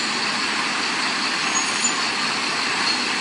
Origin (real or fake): real